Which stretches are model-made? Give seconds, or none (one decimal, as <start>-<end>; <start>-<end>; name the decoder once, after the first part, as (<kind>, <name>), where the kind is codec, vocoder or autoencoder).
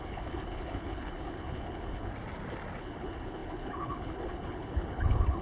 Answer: 0.0-2.1 (codec, HILCodec); 2.8-5.4